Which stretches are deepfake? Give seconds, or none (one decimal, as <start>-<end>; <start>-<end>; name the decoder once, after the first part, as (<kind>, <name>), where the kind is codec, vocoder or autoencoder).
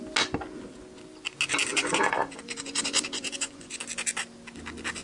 1.7-3.8 (vocoder, Vocos)